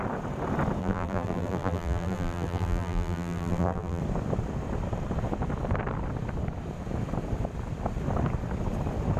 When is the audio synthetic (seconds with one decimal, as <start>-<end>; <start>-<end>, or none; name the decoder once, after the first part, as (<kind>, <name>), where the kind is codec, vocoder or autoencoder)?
0.8-4.0 (vocoder, BigVGAN v2)